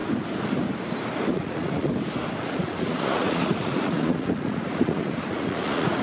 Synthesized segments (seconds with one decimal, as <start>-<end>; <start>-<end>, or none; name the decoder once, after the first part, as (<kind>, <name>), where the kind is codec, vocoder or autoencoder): 1.3-1.9 (vocoder, Vocos); 2.4-6.0